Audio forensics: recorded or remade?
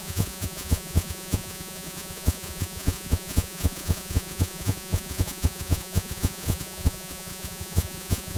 remade